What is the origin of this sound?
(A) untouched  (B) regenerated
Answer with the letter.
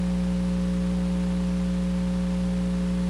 A